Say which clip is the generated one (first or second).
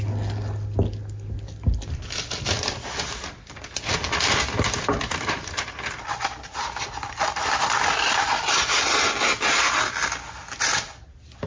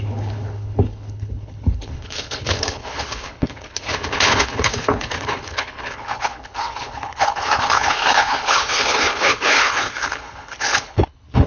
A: second